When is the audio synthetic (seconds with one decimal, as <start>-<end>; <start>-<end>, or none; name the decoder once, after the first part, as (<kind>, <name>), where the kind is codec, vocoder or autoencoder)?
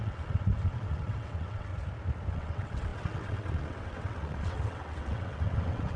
0.0-1.7 (vocoder, WaveNeXt); 2.3-6.0